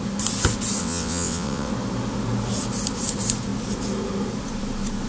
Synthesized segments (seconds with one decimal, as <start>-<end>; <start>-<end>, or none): 0.8-1.7